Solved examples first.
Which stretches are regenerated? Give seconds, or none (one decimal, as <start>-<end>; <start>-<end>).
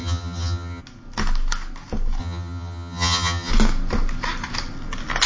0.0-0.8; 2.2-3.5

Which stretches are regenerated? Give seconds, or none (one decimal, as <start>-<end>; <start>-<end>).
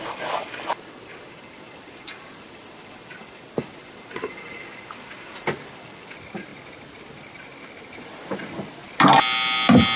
none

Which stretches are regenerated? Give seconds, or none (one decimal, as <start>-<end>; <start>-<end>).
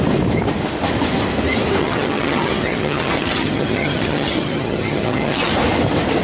1.8-5.5